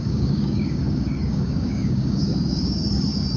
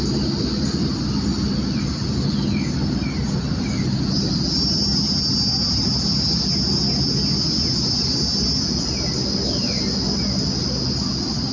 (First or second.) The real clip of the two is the second